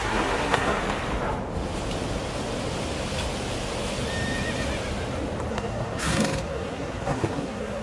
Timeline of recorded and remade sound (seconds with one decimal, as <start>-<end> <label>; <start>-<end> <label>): 0.0-0.8 remade; 0.8-5.5 recorded; 5.5-7.8 remade